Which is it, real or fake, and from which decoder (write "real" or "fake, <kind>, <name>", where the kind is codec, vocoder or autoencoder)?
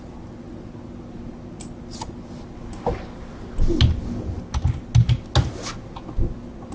real